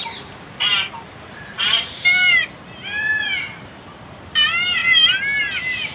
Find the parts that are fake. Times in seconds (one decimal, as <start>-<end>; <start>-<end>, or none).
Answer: 0.0-4.8; 5.4-5.9